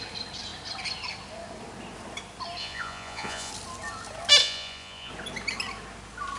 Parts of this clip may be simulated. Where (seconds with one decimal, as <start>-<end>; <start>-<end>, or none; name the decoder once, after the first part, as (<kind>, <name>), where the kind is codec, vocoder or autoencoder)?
2.6-3.5 (vocoder, Vocos); 4.4-5.1